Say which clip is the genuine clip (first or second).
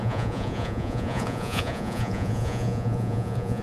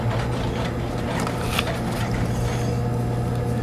second